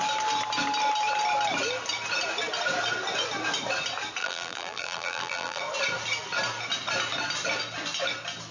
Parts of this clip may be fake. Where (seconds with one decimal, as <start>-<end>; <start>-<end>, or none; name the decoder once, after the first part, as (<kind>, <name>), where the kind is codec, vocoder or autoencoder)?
4.2-5.6 (vocoder, BigVGAN v2)

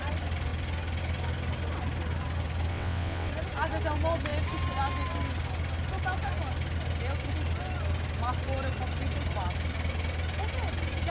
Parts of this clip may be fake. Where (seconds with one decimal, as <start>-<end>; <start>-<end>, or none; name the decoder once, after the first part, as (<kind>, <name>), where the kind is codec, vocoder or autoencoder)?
2.7-3.3 (vocoder, WaveNeXt)

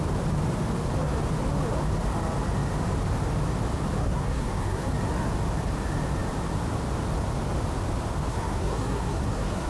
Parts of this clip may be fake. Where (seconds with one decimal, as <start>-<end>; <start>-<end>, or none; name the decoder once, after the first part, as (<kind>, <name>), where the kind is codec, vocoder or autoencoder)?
4.0-4.9 (codec, SNAC); 8.3-9.7

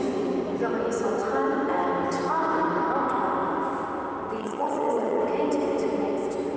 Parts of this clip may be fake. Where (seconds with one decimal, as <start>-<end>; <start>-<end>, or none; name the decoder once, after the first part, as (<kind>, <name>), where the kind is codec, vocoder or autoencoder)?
4.4-5.2 (vocoder, HiFi-GAN)

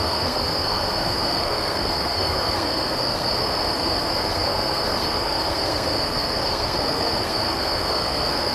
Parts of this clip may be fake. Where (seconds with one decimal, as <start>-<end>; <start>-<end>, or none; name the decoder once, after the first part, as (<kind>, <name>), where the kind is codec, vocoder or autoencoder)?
0.0-8.5 (codec, SNAC)

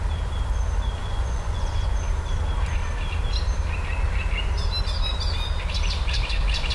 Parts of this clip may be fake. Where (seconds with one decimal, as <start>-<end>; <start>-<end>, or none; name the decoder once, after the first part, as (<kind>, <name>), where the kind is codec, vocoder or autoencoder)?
1.0-1.9 (vocoder, Vocos)

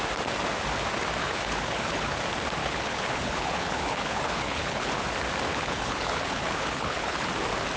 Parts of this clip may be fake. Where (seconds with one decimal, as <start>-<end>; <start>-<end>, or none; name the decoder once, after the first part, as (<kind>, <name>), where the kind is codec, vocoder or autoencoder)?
1.2-2.2 (codec, HILCodec); 2.6-4.9; 5.5-7.3

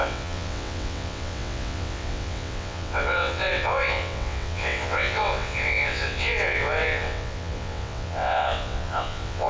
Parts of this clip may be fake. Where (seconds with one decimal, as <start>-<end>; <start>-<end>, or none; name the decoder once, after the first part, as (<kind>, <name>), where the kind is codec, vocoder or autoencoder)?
0.0-9.5 (vocoder, WaveNeXt)